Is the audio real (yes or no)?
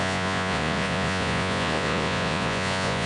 no